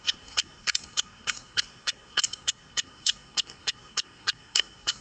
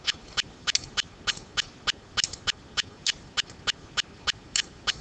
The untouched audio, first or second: second